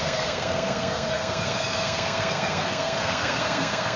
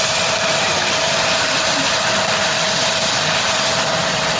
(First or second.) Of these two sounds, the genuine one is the second